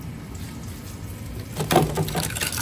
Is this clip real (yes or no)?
yes